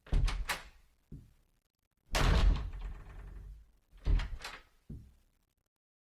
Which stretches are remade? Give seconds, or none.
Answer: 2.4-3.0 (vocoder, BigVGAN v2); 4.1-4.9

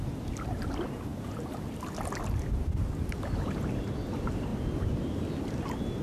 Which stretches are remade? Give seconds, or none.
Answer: none